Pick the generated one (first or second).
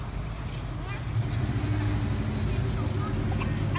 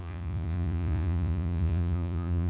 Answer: second